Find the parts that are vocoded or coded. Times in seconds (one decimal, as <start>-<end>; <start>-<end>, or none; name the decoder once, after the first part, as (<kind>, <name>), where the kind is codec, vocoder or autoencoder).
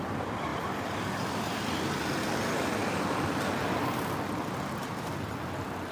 0.5-1.6 (vocoder, BigVGAN v2); 4.8-5.3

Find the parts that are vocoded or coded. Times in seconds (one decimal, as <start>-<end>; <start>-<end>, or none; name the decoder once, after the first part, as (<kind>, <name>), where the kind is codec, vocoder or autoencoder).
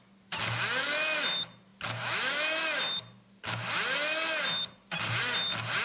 none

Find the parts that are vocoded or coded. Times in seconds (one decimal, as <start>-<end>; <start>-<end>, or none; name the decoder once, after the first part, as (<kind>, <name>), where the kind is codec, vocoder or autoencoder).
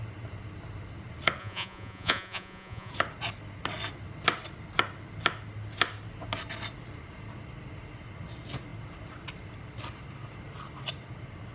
1.4-2.9 (vocoder, Vocos)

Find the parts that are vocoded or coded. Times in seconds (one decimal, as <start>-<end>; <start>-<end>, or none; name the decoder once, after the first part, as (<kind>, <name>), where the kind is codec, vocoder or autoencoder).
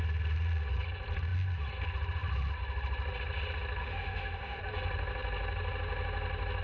3.8-4.6 (autoencoder, DAC-VAE)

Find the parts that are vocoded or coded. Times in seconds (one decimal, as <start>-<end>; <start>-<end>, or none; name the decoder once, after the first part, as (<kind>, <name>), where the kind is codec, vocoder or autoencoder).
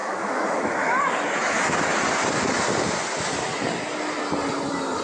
0.0-0.8 (autoencoder, DAC-VAE)